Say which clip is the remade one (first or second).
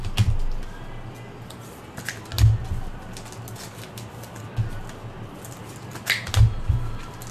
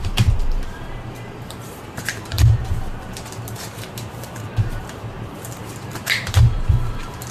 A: second